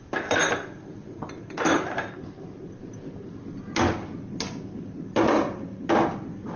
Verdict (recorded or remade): recorded